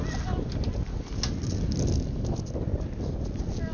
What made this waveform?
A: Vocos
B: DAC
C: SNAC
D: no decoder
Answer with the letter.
D